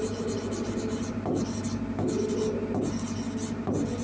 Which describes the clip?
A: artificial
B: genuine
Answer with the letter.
B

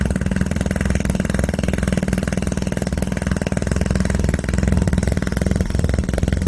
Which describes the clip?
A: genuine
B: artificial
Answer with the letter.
A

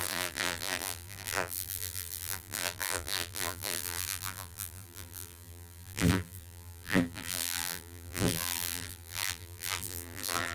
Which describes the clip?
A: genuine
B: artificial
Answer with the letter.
B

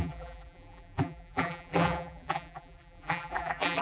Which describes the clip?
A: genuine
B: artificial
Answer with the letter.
B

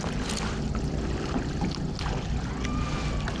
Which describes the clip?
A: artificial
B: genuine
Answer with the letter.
B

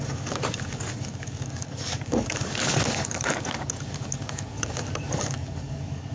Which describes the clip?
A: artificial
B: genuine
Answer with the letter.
A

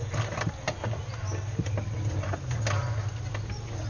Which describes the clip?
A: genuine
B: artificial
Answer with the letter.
A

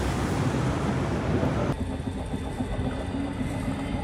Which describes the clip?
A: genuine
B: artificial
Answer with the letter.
A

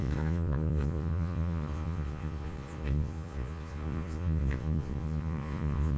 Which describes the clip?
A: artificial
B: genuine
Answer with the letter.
A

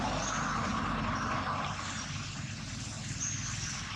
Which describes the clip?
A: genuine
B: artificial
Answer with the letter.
A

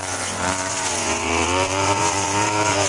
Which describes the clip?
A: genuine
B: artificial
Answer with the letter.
B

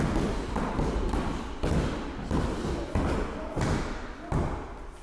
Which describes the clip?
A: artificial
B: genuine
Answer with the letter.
B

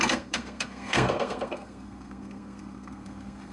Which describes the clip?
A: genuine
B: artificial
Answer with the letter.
B